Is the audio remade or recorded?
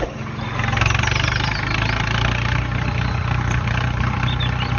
recorded